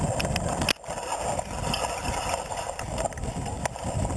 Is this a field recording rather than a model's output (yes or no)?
yes